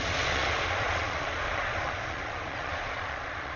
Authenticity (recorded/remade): remade